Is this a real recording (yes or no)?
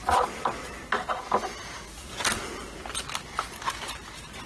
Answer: yes